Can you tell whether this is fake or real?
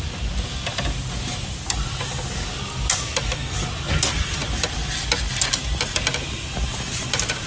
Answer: real